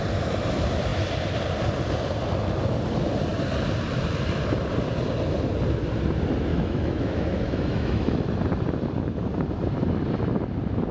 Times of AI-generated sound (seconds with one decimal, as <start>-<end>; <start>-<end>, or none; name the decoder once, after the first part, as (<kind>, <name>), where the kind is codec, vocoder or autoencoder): 6.5-8.3 (autoencoder, DAC-VAE)